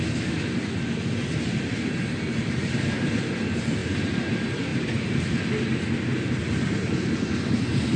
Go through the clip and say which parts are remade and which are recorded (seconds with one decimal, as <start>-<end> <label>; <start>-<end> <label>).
0.0-2.3 recorded; 2.3-3.1 remade; 3.1-3.8 recorded; 3.8-4.3 remade; 4.3-8.0 recorded